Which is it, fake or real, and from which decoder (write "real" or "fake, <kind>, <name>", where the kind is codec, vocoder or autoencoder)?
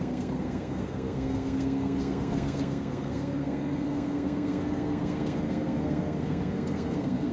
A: fake, codec, SNAC